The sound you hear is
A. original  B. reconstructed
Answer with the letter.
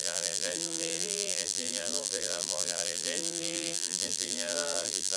B